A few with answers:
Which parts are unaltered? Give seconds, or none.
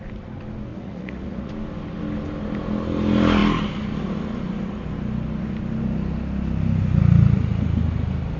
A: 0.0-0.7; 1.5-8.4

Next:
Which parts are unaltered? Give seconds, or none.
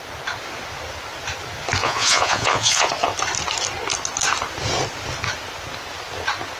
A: 0.0-1.8; 2.9-6.6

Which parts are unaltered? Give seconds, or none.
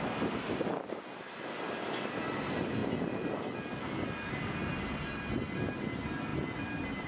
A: 0.0-7.1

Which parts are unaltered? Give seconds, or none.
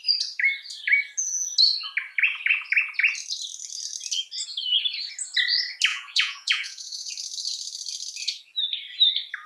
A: 0.0-5.9; 7.1-9.5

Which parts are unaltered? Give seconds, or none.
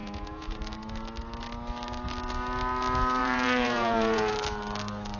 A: 0.6-3.2; 4.3-5.2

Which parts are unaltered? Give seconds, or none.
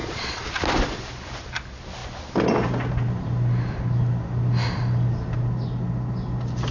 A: 0.5-6.7